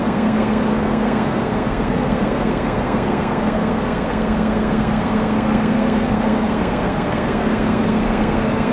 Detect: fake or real fake